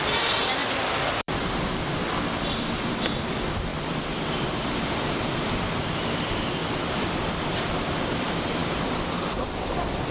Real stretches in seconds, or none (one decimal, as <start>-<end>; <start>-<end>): 0.6-1.2; 3.7-4.4